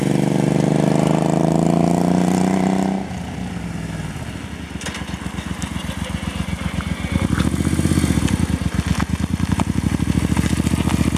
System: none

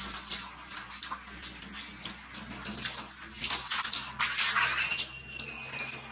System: none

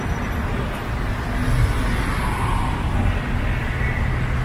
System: none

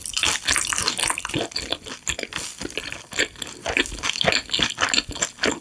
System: none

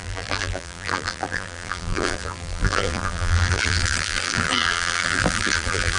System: vocoder, BigVGAN v2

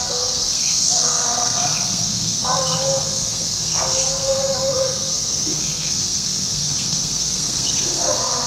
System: codec, SNAC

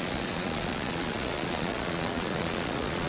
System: vocoder, Vocos